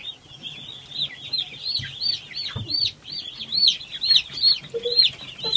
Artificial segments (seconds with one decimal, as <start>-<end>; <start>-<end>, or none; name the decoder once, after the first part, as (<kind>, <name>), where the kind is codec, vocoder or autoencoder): none